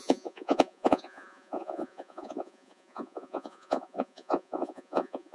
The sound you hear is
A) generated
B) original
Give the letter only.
A